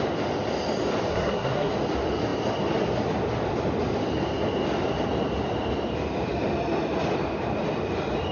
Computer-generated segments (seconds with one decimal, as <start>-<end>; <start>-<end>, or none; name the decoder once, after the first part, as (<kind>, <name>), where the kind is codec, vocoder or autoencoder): 1.1-1.7 (codec, SNAC)